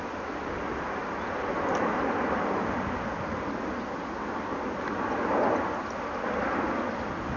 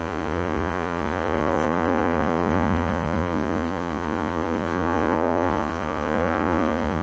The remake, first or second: second